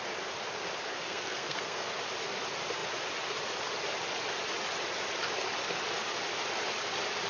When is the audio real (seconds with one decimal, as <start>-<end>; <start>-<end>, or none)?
0.0-0.9; 1.9-7.3